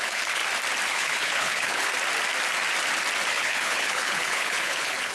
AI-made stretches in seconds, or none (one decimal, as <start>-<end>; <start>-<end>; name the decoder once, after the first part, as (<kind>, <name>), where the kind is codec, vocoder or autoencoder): 0.0-0.4 (codec, HILCodec); 0.9-1.9; 3.3-5.1